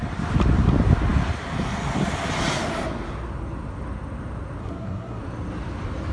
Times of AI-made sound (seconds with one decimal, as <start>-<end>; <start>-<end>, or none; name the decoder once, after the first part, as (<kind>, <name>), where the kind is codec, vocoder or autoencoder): 4.6-5.2 (codec, SNAC)